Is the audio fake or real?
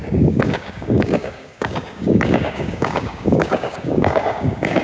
fake